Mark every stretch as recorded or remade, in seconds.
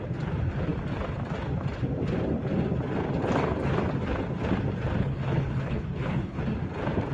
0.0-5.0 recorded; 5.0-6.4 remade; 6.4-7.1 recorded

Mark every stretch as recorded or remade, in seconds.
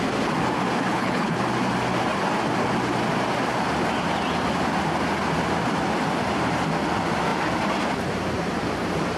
0.0-0.9 recorded; 0.9-1.4 remade; 1.4-9.2 recorded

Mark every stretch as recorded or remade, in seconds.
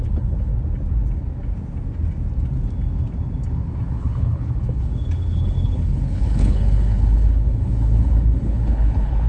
0.0-0.5 remade; 0.5-3.9 recorded; 3.9-9.3 remade